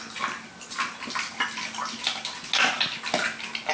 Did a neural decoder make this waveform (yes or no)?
no